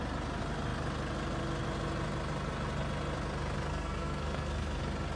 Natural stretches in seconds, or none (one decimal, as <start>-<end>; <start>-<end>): 0.0-3.7; 4.8-5.2